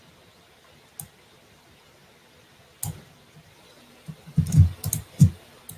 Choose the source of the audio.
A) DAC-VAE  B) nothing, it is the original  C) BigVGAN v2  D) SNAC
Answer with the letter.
B